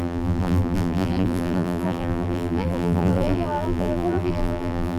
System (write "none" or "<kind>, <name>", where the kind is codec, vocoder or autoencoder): vocoder, BigVGAN v2